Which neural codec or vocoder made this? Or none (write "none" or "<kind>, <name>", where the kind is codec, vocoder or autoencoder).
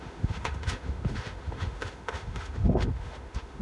autoencoder, DAC-VAE